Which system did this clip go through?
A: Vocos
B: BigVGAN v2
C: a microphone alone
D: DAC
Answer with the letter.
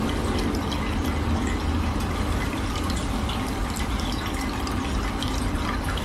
C